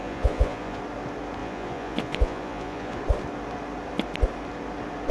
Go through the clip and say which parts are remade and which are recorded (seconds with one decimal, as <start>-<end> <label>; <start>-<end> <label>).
0.0-0.8 remade; 0.8-1.4 recorded; 1.4-3.0 remade; 3.0-5.1 recorded